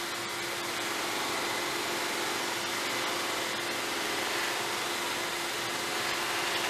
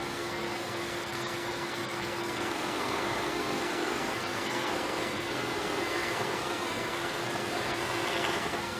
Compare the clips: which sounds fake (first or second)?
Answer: second